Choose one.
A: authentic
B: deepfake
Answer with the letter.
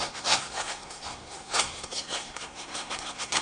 B